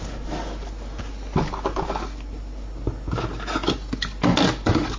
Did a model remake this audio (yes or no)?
no